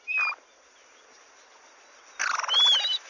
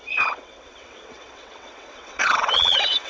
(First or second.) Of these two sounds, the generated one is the second